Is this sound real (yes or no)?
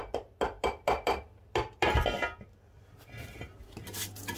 yes